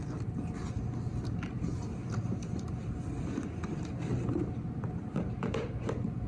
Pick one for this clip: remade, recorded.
recorded